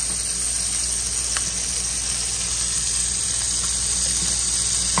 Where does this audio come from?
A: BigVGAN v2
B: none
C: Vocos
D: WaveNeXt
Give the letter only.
B